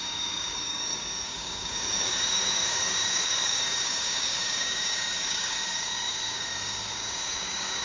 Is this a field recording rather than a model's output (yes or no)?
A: no